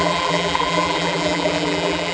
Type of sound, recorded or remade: remade